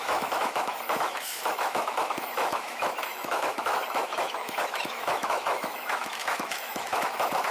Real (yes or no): no